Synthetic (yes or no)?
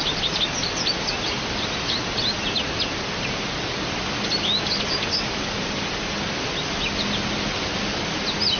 no